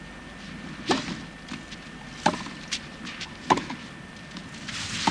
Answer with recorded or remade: remade